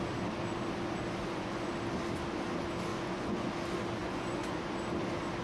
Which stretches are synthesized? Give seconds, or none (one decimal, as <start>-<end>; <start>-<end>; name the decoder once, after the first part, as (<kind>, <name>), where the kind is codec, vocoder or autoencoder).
1.2-1.7 (vocoder, Vocos); 2.9-3.5; 4.0-4.6

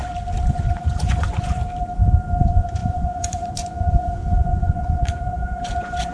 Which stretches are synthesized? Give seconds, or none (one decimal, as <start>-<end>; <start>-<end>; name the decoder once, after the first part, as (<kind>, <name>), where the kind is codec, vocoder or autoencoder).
0.5-1.6 (vocoder, Vocos); 2.4-6.1